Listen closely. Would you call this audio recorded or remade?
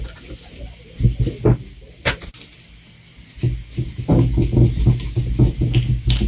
recorded